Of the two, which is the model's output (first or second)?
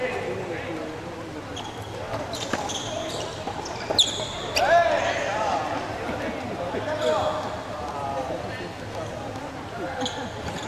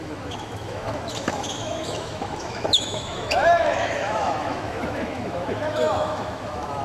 second